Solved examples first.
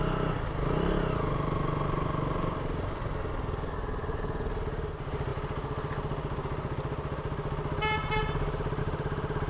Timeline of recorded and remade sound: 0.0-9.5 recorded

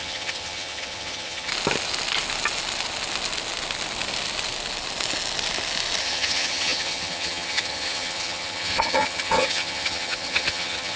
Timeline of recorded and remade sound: 0.0-1.5 remade; 1.5-6.0 recorded; 6.0-11.0 remade

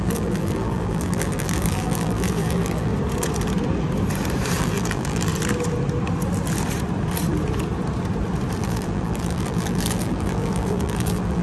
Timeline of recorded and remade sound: 0.0-2.9 remade; 2.9-4.6 recorded; 4.6-5.3 remade; 5.3-8.6 recorded; 8.6-11.4 remade

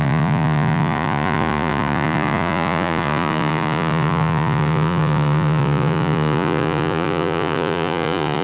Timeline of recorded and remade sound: 0.0-8.4 remade

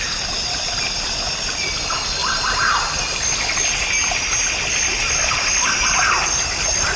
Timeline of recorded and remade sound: 0.0-7.0 recorded